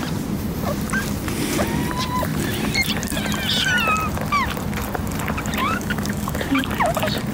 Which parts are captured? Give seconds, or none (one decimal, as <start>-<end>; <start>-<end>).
0.0-5.6; 6.6-7.3